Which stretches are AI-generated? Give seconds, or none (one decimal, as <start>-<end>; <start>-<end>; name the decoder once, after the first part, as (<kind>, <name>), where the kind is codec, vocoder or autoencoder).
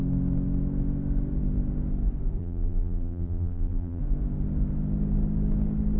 2.4-4.0 (vocoder, BigVGAN v2)